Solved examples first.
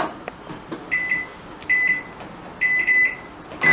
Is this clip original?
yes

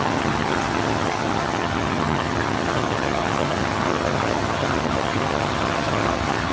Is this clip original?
no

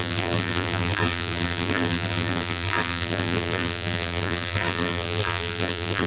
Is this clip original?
no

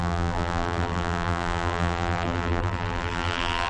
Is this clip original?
no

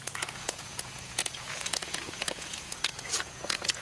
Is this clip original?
no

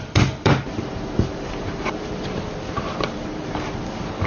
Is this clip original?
no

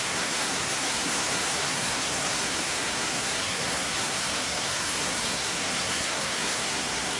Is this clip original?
no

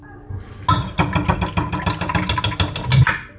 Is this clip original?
yes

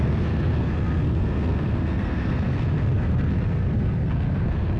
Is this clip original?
no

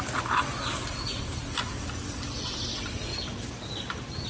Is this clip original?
yes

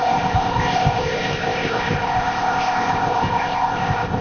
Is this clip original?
no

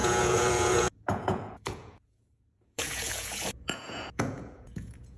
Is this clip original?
no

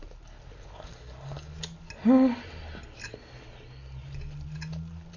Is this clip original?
yes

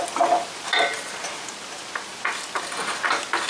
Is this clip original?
yes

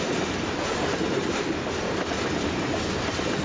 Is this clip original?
yes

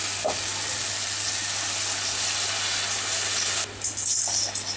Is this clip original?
yes